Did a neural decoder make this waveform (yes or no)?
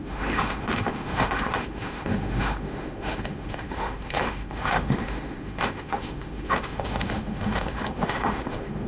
yes